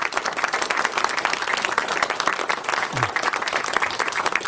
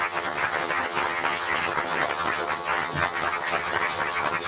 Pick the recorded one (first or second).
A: first